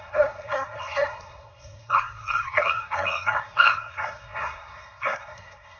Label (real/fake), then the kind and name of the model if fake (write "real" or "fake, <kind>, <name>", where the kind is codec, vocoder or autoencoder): fake, codec, SNAC